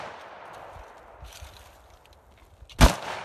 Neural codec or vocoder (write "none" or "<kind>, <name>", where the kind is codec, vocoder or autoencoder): none